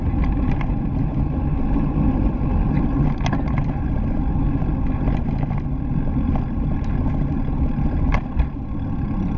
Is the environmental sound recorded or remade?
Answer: recorded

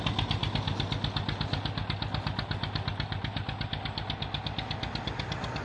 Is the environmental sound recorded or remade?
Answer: recorded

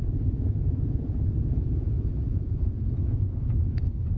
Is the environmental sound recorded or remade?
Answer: remade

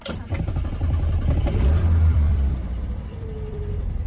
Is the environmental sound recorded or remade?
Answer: remade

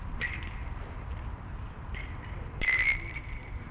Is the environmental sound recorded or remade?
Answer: remade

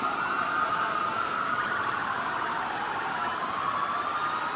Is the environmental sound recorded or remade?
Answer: recorded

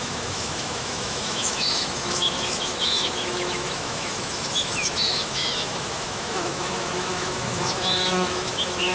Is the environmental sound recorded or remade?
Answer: remade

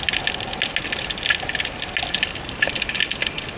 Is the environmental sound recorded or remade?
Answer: recorded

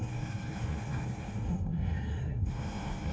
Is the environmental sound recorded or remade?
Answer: remade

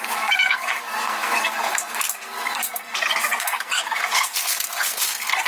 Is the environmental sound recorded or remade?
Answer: remade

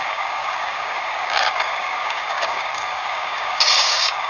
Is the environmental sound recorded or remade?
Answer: remade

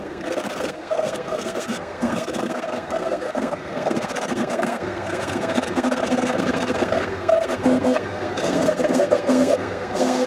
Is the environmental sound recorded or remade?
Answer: remade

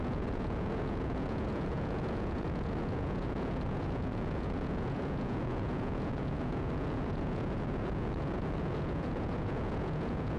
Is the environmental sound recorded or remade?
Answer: remade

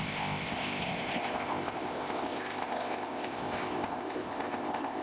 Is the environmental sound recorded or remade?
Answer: remade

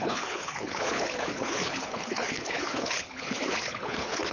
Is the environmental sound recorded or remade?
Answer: remade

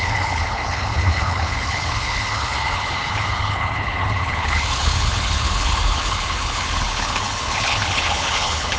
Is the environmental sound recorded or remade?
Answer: remade